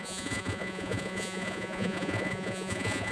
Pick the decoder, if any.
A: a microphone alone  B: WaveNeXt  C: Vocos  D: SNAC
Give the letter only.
C